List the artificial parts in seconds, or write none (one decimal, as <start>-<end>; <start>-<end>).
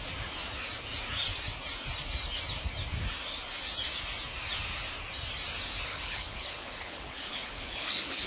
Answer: 5.9-8.3